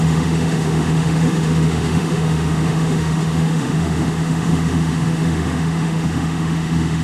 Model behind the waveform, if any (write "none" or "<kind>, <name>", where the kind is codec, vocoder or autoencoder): autoencoder, DAC-VAE